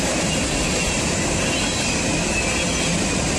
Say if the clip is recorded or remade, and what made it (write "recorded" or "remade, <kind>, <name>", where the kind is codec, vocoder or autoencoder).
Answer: recorded